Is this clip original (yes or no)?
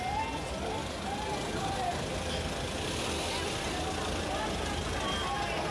yes